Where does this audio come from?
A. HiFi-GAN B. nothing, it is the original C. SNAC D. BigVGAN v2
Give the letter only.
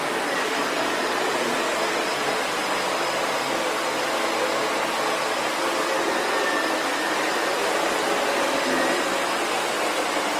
B